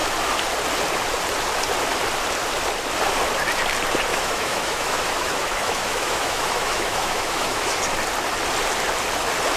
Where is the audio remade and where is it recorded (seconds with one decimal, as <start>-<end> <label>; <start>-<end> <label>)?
0.0-4.1 recorded; 4.1-7.8 remade; 7.8-9.6 recorded